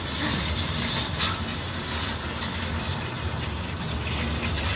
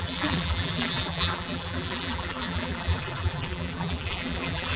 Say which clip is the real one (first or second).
first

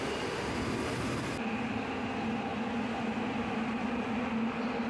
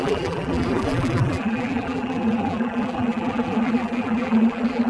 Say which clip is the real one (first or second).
first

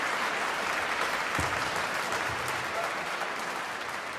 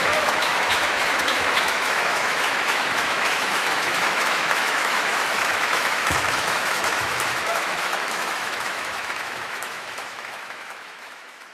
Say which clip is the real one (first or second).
first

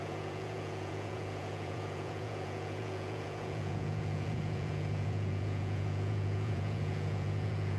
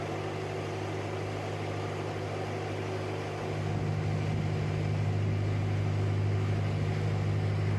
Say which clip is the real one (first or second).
second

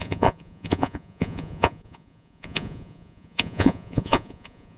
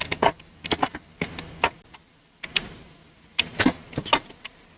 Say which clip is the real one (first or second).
second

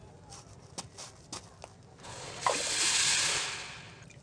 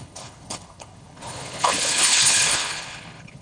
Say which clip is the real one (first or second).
first